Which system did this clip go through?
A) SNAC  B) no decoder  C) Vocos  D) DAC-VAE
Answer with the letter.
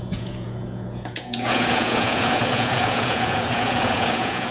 C